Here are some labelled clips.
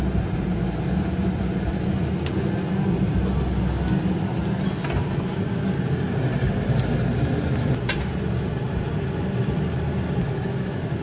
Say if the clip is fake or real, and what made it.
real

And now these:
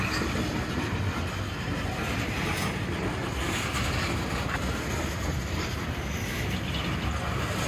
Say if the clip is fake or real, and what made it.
real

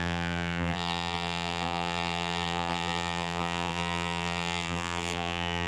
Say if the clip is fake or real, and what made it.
fake, vocoder, BigVGAN v2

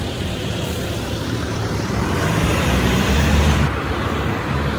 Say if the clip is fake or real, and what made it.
fake, vocoder, BigVGAN v2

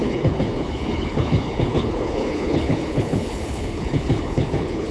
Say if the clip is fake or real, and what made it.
fake, codec, HILCodec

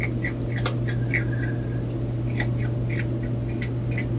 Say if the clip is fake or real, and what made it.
real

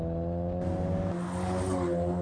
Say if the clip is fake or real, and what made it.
real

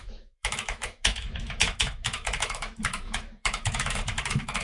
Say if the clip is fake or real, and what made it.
fake, autoencoder, DAC-VAE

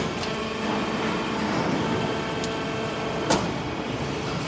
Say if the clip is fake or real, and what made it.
real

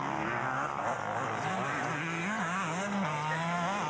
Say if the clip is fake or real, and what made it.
real